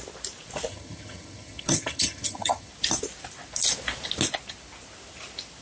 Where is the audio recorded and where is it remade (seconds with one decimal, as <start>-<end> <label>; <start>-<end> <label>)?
0.0-0.7 recorded; 0.7-2.7 remade; 2.7-5.6 recorded